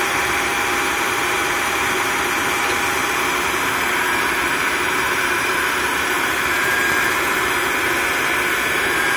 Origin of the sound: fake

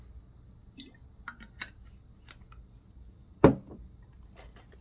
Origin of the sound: real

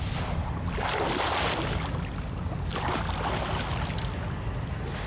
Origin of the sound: real